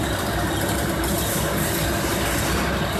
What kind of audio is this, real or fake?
real